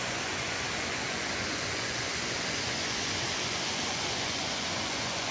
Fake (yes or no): yes